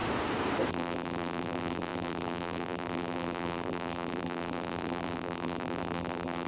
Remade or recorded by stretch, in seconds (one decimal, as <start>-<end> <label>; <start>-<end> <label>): 0.0-0.7 recorded; 0.7-6.5 remade